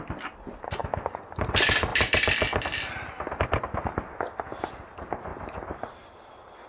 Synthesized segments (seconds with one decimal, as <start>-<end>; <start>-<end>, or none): 0.8-1.3; 5.3-6.7